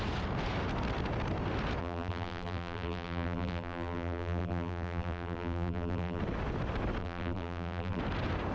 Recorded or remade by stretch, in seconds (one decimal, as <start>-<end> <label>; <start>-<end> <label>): 0.0-1.8 recorded; 1.8-6.2 remade; 6.2-7.0 recorded; 7.0-8.0 remade; 8.0-8.5 recorded